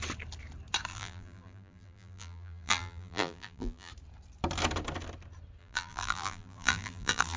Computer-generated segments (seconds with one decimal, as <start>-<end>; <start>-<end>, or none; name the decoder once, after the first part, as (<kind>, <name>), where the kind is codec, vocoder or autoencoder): 0.9-3.9 (vocoder, BigVGAN v2); 5.6-7.4